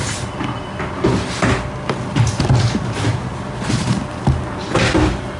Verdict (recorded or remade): recorded